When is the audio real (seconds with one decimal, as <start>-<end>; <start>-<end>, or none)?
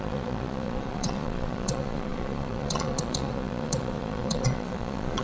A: none